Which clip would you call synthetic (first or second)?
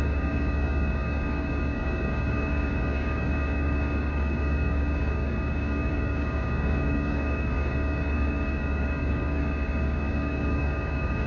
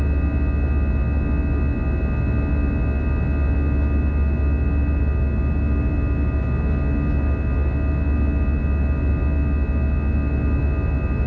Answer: first